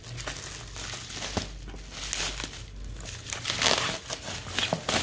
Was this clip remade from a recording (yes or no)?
no